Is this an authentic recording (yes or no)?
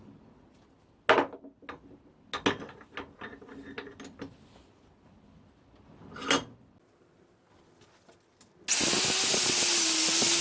yes